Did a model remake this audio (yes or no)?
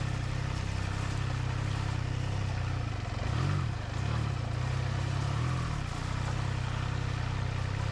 no